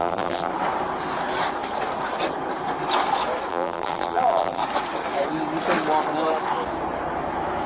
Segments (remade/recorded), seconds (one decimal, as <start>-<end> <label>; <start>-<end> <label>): 0.0-0.5 remade; 0.5-3.5 recorded; 3.5-4.6 remade; 4.6-7.7 recorded